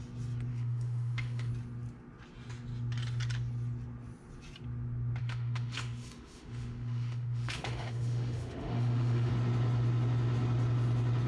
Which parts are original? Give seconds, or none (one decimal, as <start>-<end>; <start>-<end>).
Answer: 0.0-0.5; 1.5-5.2; 9.3-11.3